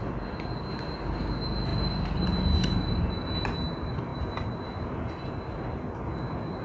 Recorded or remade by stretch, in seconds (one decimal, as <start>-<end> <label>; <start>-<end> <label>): 0.0-6.6 recorded

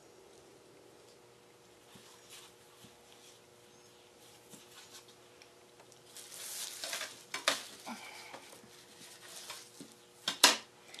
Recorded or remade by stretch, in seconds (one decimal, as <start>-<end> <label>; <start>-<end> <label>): 0.0-0.7 remade; 0.7-11.0 recorded

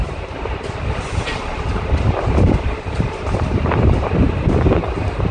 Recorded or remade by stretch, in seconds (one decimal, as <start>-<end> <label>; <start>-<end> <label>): 0.0-0.7 remade; 0.7-1.5 recorded; 1.5-4.3 remade; 4.3-5.3 recorded

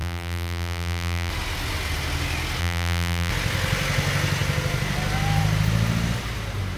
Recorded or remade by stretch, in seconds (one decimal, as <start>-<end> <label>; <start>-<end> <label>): 0.0-1.3 remade; 1.3-2.6 recorded; 2.6-3.3 remade; 3.3-6.8 recorded